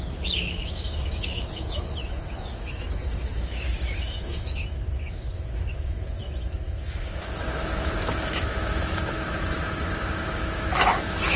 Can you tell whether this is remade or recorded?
remade